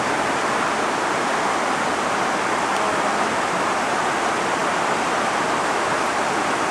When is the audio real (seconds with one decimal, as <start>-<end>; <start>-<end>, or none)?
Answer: 0.0-6.7

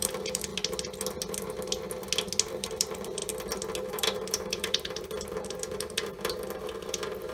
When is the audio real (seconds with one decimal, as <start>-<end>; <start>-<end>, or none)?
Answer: 0.5-2.5; 3.2-3.9

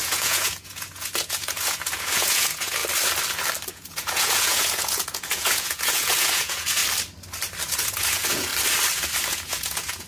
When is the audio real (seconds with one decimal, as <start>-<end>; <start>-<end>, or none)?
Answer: 2.8-3.7; 6.8-7.8; 8.5-9.3